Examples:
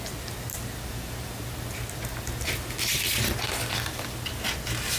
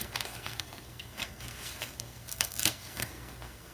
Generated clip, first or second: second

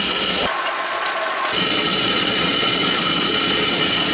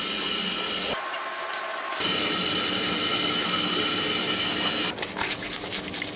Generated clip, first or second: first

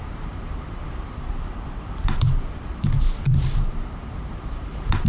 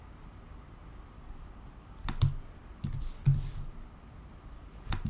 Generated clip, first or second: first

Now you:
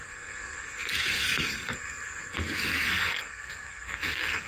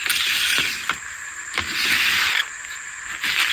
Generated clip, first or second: first